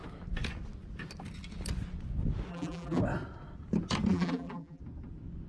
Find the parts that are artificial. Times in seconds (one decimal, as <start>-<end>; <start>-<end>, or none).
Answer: 2.5-3.0; 4.1-4.8